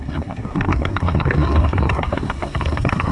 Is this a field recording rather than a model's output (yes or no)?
no